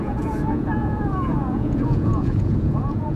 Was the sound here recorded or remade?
remade